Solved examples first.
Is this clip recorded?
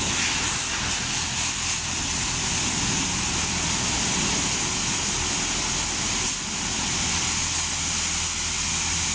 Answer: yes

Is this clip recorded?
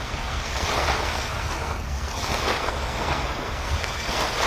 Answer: no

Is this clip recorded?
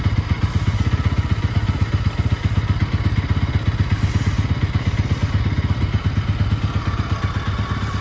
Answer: yes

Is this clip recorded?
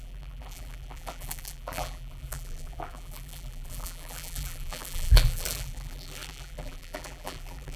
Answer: no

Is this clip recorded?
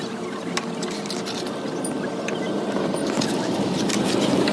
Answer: yes